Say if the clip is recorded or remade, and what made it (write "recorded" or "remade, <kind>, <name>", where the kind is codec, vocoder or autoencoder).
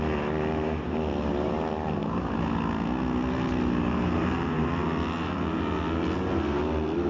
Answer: recorded